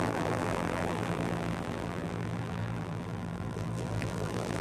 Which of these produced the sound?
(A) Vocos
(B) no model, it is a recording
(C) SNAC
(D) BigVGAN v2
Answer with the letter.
D